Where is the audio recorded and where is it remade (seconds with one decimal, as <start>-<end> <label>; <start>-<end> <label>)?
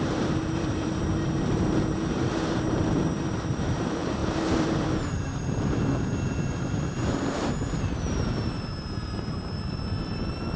0.0-10.6 remade